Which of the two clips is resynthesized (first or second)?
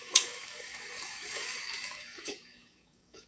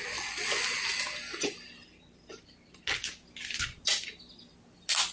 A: first